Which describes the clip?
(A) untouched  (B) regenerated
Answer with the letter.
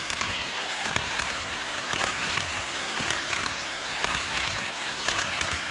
B